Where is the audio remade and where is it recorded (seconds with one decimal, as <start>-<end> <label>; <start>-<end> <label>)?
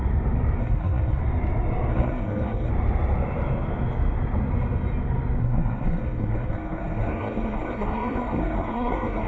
0.0-0.6 recorded; 0.6-1.2 remade; 1.2-1.9 recorded; 1.9-2.7 remade; 2.7-5.4 recorded; 5.4-9.3 remade